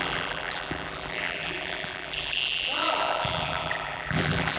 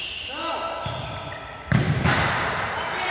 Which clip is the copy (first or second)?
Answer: first